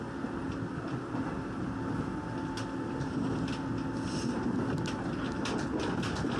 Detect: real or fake real